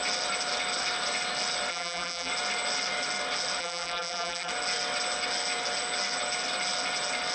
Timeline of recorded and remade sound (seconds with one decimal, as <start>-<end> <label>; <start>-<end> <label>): 0.0-1.7 recorded; 1.7-2.3 remade; 2.3-3.6 recorded; 3.6-4.5 remade; 4.5-7.3 recorded